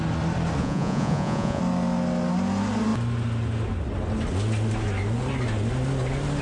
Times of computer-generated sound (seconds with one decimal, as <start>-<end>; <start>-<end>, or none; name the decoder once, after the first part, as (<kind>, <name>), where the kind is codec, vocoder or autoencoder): 0.6-1.6 (vocoder, Vocos)